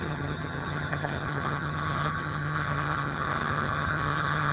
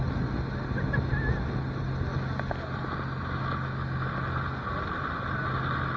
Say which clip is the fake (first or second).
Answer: first